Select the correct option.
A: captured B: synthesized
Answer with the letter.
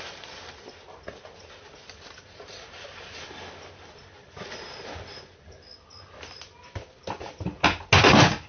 A